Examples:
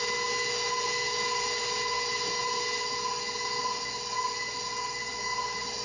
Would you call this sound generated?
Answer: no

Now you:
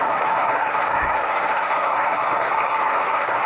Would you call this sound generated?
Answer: yes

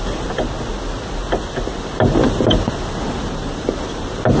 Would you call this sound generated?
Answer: no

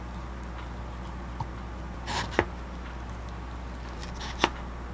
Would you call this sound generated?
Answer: no